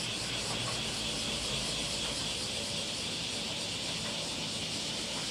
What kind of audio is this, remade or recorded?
recorded